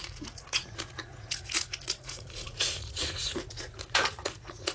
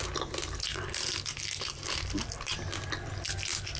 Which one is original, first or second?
second